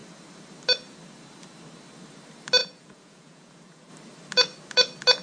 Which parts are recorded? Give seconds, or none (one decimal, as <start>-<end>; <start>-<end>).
0.0-2.6; 3.9-5.2